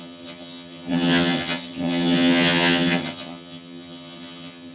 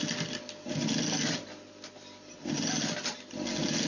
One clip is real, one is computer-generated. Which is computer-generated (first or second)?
first